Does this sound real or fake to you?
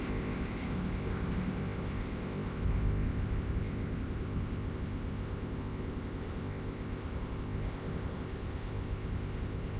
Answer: fake